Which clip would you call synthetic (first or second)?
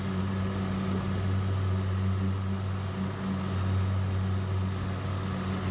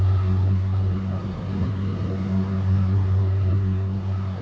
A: second